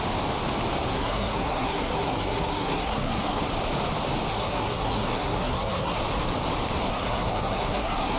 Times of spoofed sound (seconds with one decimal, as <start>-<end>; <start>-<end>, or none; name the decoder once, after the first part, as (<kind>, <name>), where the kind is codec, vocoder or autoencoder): 0.9-3.4 (codec, SNAC); 4.3-6.0; 6.9-8.2